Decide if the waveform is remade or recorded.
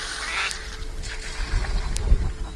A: recorded